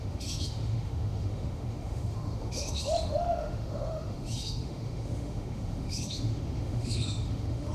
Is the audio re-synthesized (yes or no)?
yes